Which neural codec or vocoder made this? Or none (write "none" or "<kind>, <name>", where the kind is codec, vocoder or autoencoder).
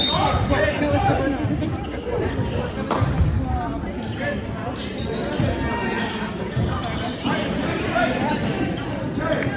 none